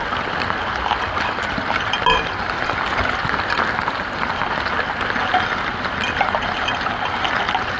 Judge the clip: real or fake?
real